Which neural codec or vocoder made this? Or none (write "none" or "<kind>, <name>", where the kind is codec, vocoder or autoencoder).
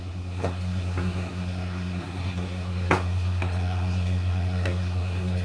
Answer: codec, SNAC